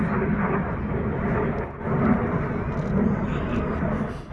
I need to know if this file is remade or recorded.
recorded